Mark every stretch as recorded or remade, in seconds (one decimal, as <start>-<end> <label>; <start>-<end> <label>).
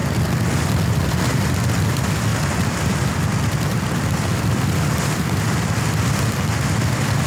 0.0-7.3 recorded